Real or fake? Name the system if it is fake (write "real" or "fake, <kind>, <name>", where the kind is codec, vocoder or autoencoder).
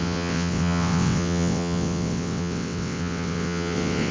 fake, vocoder, WaveNeXt